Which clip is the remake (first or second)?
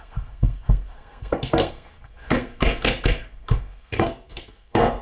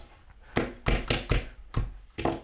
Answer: first